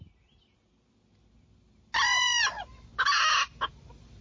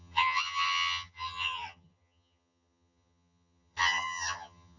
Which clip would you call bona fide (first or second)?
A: first